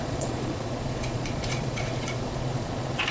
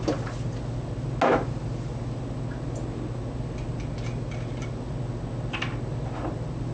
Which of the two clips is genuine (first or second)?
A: second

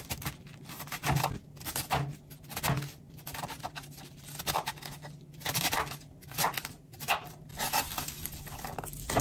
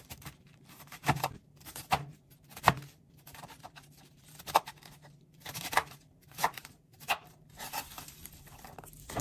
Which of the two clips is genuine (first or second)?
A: first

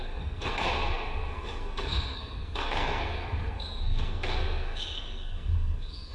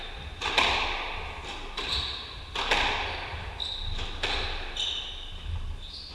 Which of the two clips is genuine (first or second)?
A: second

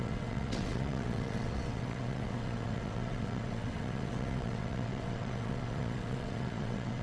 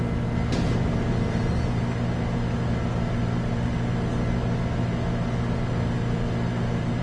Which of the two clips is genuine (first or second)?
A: second